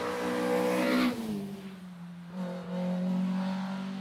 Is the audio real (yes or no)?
yes